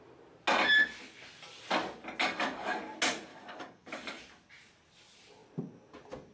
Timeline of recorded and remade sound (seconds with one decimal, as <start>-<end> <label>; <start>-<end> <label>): 0.0-2.2 recorded; 2.2-2.8 remade; 2.8-3.3 recorded; 3.3-4.2 remade; 4.2-6.3 recorded